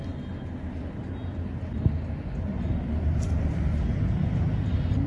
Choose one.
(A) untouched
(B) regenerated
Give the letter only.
A